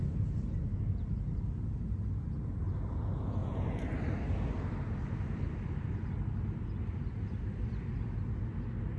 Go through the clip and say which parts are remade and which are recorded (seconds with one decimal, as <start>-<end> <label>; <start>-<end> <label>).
0.0-9.0 recorded